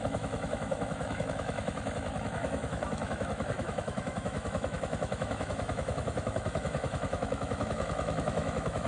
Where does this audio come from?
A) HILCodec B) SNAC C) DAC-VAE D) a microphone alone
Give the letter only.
C